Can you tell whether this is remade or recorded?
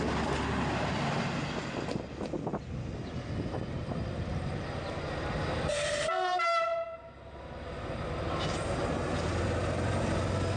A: recorded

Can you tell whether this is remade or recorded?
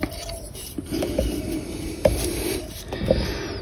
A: recorded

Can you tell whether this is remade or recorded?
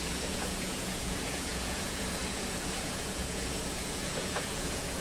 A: remade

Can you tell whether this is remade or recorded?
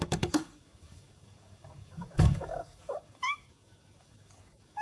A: remade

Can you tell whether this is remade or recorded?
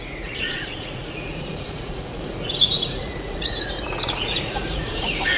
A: remade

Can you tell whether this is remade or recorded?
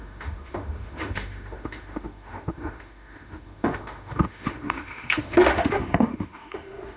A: remade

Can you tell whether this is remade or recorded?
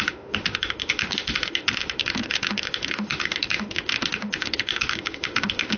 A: remade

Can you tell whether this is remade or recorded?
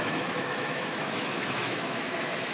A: remade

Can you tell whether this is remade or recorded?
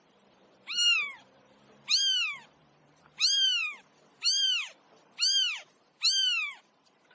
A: remade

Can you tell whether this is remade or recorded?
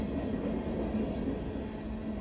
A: recorded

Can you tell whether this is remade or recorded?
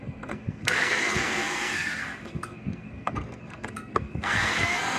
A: remade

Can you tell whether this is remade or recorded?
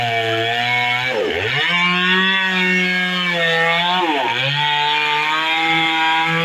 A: recorded